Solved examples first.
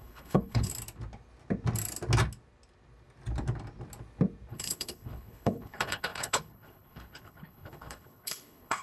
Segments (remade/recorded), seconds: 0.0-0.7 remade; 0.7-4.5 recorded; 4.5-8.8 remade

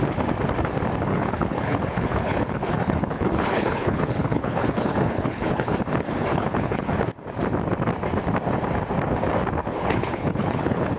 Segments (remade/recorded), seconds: 0.0-1.1 recorded; 1.1-5.8 remade; 5.8-6.3 recorded; 6.3-6.9 remade; 6.9-9.6 recorded; 9.6-11.0 remade

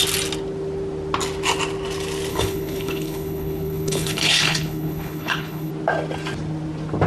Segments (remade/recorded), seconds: 0.0-2.3 recorded; 2.3-5.7 remade; 5.7-7.1 recorded